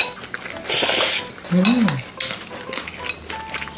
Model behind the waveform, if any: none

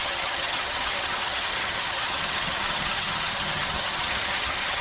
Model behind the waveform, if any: vocoder, HiFi-GAN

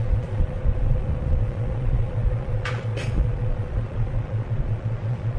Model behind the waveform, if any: vocoder, Vocos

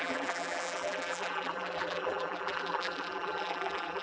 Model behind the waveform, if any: vocoder, BigVGAN v2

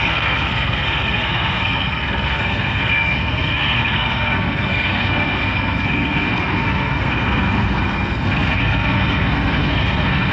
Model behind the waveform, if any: codec, SNAC